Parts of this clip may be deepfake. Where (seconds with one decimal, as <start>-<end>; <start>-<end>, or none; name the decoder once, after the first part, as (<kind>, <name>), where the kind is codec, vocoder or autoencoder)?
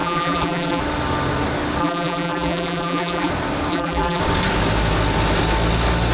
0.0-0.8 (vocoder, BigVGAN v2); 1.8-3.3; 3.7-4.2